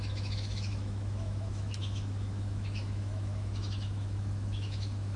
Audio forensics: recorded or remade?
remade